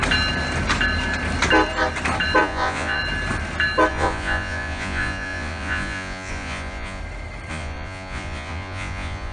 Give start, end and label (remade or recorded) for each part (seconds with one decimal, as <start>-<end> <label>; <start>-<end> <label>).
0.0-2.4 recorded; 2.4-3.0 remade; 3.0-3.9 recorded; 3.9-7.0 remade; 7.0-7.5 recorded; 7.5-9.3 remade